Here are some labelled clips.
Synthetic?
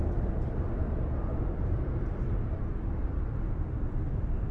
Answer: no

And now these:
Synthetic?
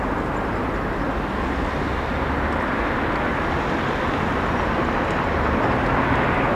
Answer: no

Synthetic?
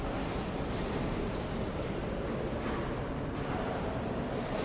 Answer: no